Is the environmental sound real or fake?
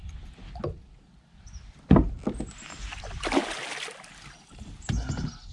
real